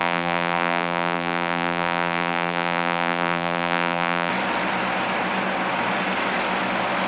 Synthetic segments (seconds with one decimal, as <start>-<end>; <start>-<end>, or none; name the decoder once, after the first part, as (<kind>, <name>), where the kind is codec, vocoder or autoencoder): 0.0-4.3 (vocoder, BigVGAN v2)